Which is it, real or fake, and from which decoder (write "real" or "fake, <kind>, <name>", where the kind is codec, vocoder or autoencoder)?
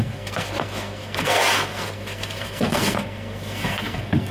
fake, codec, SNAC